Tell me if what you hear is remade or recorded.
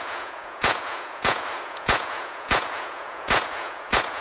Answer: remade